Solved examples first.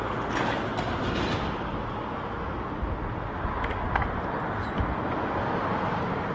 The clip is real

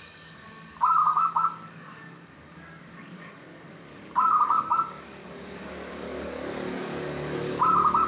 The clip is fake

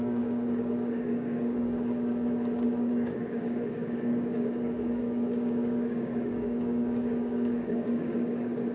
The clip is fake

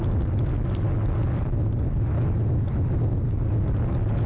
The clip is real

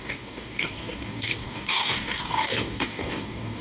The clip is fake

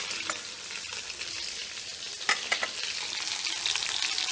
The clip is real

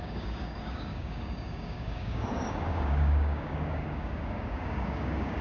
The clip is fake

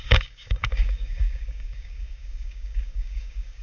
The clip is fake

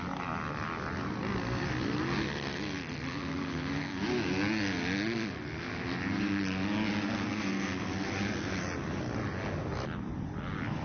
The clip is real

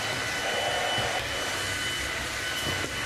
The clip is real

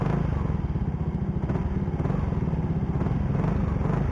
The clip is real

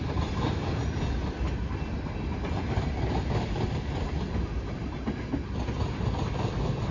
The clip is real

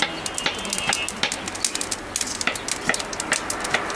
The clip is real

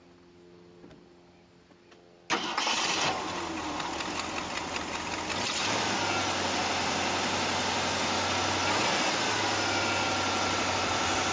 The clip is real